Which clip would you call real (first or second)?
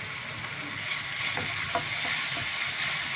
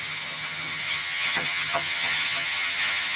first